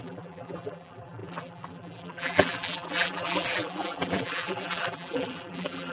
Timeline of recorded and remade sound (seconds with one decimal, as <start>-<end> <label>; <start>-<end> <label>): 0.0-5.9 remade